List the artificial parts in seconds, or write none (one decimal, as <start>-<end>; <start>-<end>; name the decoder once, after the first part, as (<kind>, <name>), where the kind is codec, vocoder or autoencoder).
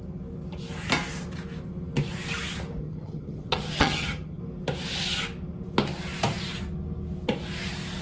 2.8-4.4 (vocoder, HiFi-GAN)